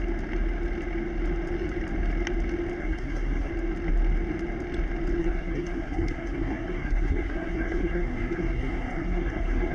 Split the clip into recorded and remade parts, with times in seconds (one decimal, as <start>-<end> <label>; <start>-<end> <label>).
0.0-2.8 recorded; 2.8-3.5 remade; 3.5-5.2 recorded; 5.2-9.7 remade